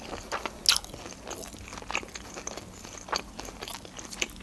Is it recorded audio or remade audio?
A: recorded